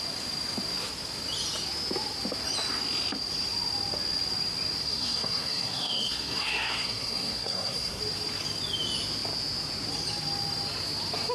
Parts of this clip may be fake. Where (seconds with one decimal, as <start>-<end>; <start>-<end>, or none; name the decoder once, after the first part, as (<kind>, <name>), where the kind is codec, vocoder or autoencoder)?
4.8-8.0 (codec, SNAC)